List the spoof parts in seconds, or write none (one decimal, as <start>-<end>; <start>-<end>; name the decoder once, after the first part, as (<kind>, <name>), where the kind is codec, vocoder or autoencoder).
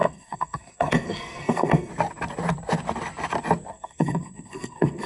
0.0-1.9 (codec, SNAC); 3.7-5.1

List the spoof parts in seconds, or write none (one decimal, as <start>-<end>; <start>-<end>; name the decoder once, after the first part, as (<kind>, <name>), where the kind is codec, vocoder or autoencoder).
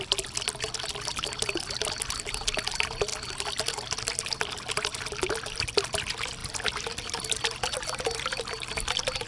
none